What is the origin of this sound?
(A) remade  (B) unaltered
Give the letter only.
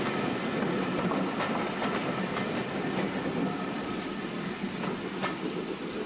B